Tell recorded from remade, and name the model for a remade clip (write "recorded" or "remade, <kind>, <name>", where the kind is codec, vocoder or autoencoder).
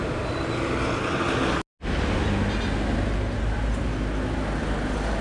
recorded